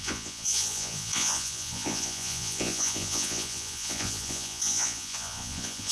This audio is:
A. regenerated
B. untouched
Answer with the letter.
A